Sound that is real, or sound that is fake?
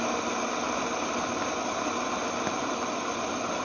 real